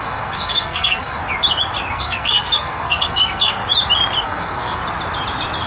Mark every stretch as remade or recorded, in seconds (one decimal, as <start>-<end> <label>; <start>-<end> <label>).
0.0-1.2 remade; 1.2-1.9 recorded; 1.9-3.6 remade; 3.6-4.2 recorded; 4.2-4.8 remade; 4.8-5.7 recorded